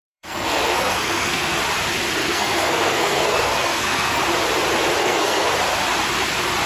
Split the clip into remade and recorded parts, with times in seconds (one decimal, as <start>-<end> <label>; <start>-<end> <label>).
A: 0.0-1.6 remade; 1.6-2.2 recorded; 2.2-4.2 remade; 4.2-5.0 recorded; 5.0-5.5 remade; 5.5-6.7 recorded